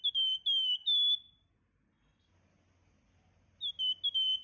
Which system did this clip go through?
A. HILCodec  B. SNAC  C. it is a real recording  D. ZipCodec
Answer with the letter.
C